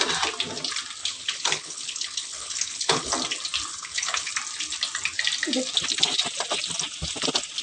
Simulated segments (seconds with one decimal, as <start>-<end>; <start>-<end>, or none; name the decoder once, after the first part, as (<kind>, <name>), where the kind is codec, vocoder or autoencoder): 1.0-3.1 (codec, HILCodec); 3.7-4.3